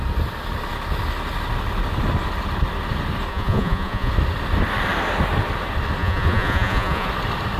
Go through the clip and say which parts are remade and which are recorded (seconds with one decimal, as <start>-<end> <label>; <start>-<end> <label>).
0.0-3.3 recorded; 3.3-4.1 remade; 4.1-6.0 recorded; 6.0-7.1 remade; 7.1-7.6 recorded